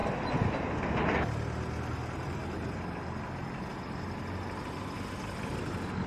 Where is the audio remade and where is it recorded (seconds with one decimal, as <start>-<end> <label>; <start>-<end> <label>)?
0.0-0.7 remade; 0.7-2.4 recorded; 2.4-3.0 remade; 3.0-6.1 recorded